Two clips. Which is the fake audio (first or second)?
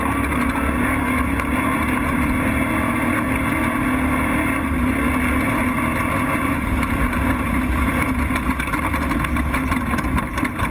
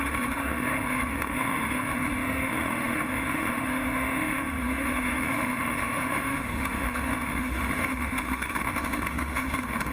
second